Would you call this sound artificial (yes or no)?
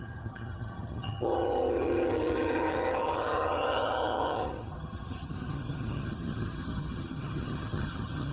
yes